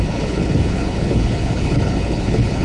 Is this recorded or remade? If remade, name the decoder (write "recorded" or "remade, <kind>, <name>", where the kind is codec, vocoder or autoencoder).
remade, codec, HILCodec